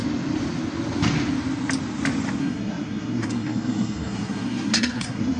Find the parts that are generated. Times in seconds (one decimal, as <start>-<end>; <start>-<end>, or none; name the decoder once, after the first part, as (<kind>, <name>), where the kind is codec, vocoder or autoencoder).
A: 2.4-5.4 (codec, SNAC)